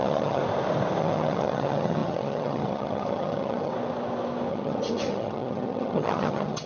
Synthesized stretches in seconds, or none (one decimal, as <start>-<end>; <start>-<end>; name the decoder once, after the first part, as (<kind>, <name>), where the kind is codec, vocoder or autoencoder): 0.0-0.4 (vocoder, HiFi-GAN); 1.0-3.7; 4.5-6.7